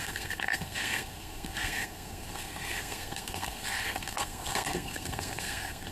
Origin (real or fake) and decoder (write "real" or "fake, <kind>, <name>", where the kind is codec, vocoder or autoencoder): fake, codec, SNAC